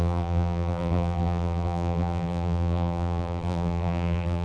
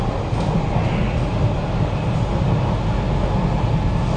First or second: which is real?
second